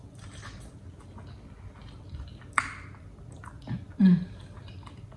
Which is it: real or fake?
real